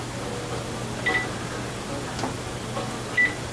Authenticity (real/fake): real